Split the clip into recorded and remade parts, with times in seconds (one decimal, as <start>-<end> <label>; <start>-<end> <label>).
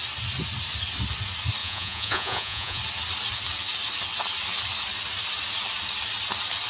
0.0-1.6 recorded; 1.6-2.8 remade; 2.8-6.7 recorded